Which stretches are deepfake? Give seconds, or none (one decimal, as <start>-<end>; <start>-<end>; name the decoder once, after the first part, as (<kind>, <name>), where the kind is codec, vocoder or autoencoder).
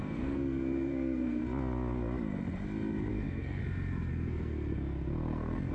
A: 0.0-1.4 (codec, SNAC); 3.1-3.6; 4.1-5.7